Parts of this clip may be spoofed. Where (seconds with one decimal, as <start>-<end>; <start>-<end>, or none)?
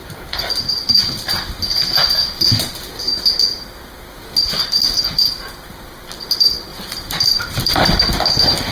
0.0-1.6; 6.7-8.0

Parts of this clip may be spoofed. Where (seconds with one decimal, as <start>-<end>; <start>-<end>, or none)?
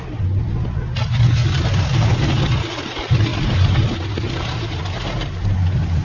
1.4-2.4; 3.3-6.0